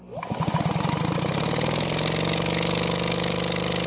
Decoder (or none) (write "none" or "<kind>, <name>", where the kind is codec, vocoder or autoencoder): none